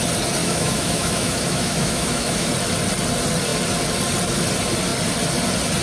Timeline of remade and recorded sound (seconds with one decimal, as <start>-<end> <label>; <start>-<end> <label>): 0.0-0.4 recorded; 0.4-2.5 remade; 2.5-5.8 recorded